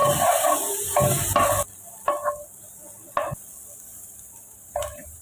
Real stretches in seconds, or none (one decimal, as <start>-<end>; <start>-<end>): 0.8-3.9